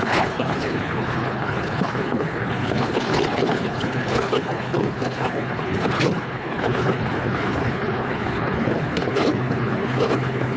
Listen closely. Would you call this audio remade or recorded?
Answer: remade